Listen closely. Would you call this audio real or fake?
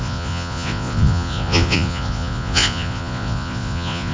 fake